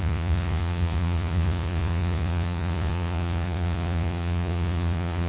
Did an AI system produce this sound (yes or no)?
yes